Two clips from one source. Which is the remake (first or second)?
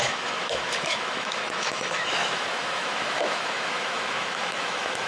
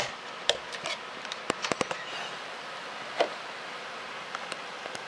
first